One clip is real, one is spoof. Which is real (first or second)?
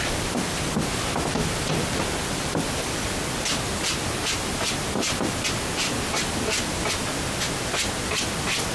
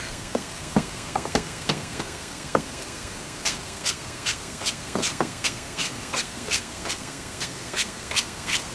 first